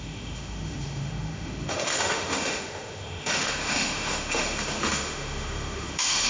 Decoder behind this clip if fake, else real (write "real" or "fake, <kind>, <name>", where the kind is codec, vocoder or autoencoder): fake, autoencoder, DAC-VAE